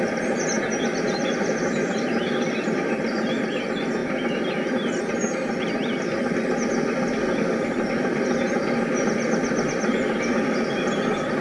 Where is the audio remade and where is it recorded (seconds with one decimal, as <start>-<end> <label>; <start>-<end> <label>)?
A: 0.0-11.4 recorded